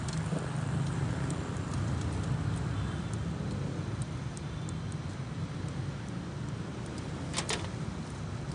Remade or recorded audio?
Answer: recorded